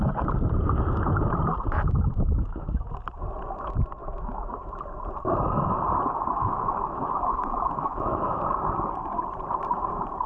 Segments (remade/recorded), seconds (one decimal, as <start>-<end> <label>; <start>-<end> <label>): 0.0-2.1 recorded; 2.1-2.9 remade; 2.9-4.0 recorded; 4.0-4.7 remade; 4.7-6.4 recorded; 6.4-8.4 remade; 8.4-10.3 recorded